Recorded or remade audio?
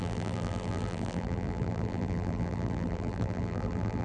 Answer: remade